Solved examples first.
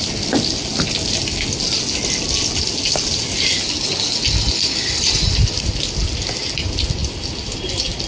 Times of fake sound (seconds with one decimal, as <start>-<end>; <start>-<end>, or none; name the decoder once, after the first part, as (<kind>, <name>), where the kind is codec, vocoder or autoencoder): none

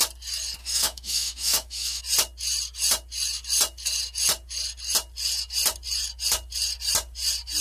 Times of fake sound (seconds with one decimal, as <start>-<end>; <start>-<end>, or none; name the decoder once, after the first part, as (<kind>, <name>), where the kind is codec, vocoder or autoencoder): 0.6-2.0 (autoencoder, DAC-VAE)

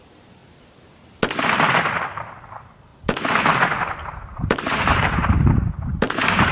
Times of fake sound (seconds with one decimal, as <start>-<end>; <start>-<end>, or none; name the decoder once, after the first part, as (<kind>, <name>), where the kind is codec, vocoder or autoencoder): 0.0-0.4 (vocoder, BigVGAN v2); 2.1-2.9; 4.1-6.5

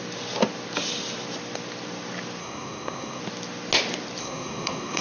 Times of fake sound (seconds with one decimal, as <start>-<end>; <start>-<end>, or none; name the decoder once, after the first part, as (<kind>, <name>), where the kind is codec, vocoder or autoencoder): 2.4-3.2 (codec, SNAC); 4.2-5.0

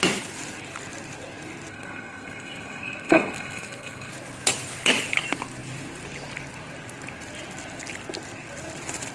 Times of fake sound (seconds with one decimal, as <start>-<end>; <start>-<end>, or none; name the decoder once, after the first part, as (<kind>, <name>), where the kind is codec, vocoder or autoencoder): 1.7-4.1 (codec, SNAC)

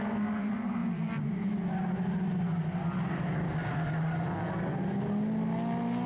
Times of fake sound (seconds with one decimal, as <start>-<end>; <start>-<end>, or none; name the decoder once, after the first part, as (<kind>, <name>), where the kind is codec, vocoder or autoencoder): none

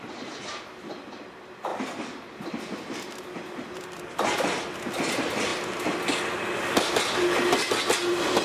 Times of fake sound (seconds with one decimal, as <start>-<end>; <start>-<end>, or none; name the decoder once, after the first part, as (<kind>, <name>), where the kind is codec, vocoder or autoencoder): 1.7-4.0 (vocoder, BigVGAN v2)

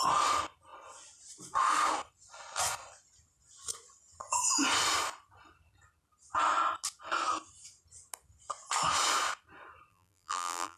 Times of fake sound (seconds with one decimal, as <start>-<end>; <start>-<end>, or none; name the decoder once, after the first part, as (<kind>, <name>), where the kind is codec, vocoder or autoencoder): 9.9-10.8 (vocoder, BigVGAN v2)